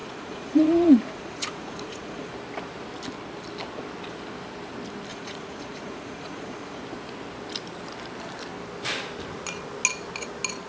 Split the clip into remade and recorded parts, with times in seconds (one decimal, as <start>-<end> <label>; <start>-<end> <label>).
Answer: 0.0-2.3 remade; 2.3-5.1 recorded; 5.1-6.8 remade; 6.8-10.7 recorded